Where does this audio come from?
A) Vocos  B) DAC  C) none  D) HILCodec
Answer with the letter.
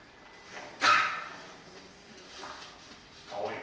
C